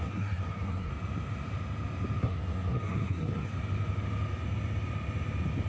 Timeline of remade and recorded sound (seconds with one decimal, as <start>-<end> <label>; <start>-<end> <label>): 0.0-0.9 remade; 0.9-2.2 recorded; 2.2-3.5 remade; 3.5-5.7 recorded